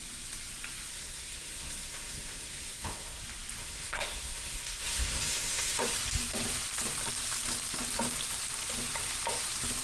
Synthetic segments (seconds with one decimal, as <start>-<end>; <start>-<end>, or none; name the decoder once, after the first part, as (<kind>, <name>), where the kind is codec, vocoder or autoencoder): 0.9-3.2 (codec, SNAC); 3.6-5.8